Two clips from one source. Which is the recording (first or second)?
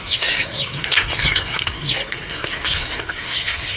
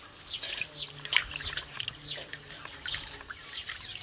second